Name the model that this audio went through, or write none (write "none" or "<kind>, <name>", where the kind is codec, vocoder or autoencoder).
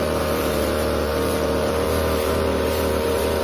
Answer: vocoder, BigVGAN v2